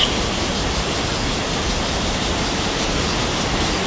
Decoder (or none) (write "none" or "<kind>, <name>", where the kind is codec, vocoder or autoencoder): none